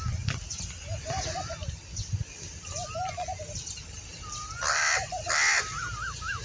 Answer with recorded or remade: recorded